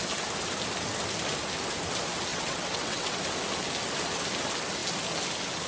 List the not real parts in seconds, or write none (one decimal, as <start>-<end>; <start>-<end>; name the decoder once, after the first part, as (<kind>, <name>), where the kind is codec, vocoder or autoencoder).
2.3-3.2 (vocoder, WaveNeXt)